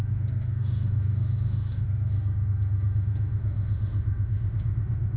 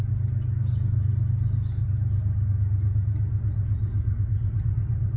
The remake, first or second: first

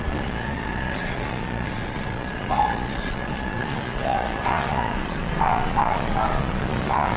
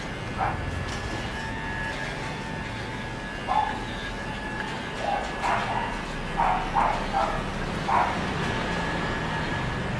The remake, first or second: first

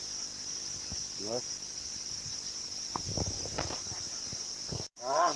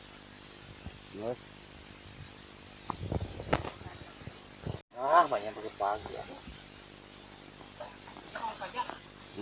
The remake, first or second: first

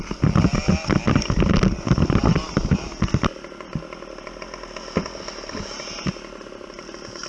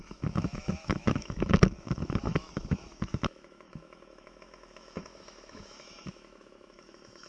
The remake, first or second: second